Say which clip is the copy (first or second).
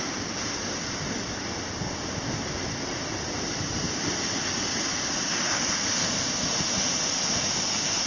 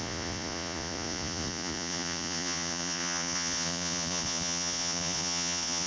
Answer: second